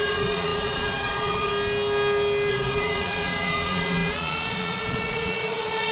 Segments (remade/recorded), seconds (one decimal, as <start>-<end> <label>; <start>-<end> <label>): 0.0-1.5 remade; 1.5-2.5 recorded; 2.5-5.9 remade